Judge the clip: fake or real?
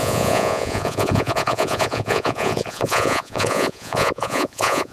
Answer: fake